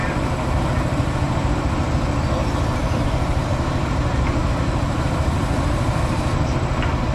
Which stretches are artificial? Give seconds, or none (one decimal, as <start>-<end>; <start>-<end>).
0.0-1.5; 2.8-6.0